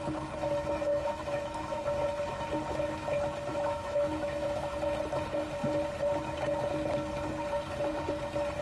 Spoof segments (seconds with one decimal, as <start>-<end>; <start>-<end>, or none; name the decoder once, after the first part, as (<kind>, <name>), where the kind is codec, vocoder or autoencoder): 0.9-1.8 (autoencoder, DAC-VAE); 3.5-4.7